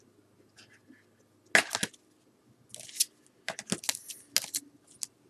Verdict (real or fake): real